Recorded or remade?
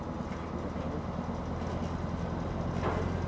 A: recorded